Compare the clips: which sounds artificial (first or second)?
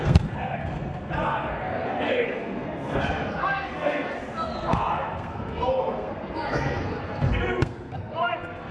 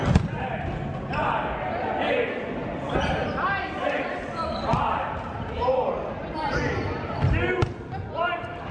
first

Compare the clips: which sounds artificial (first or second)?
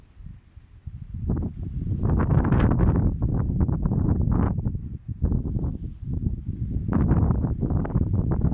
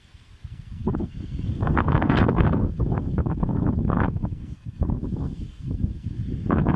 second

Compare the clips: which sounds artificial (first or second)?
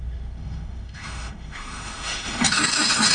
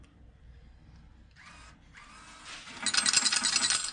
first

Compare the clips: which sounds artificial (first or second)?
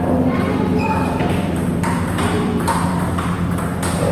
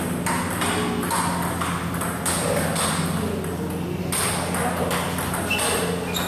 first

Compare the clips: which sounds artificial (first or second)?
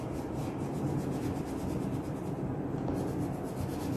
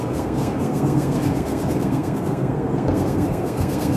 second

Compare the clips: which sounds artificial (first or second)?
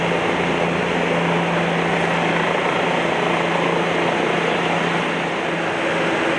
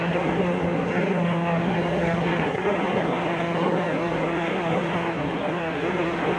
second